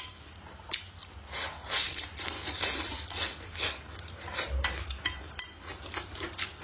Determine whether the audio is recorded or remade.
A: recorded